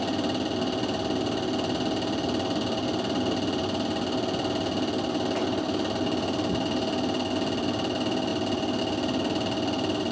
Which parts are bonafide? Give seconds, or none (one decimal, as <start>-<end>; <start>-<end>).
0.0-10.1